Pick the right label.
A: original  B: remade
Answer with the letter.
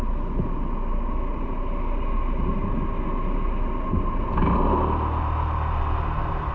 A